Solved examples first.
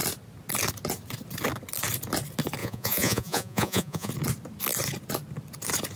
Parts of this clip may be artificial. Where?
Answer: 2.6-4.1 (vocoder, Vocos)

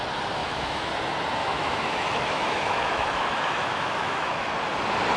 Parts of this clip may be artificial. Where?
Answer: 0.4-0.9 (autoencoder, DAC-VAE); 1.4-4.5

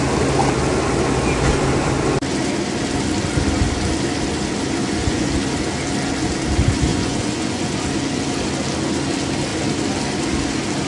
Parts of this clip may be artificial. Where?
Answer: 4.8-5.3 (vocoder, Vocos); 6.9-7.8

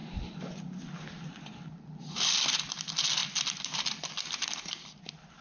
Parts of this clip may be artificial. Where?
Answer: none